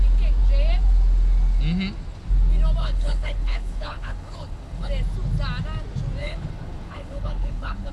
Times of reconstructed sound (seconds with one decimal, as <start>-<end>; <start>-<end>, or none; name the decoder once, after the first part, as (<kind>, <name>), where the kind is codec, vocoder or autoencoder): 2.8-4.9 (codec, HILCodec); 6.2-7.9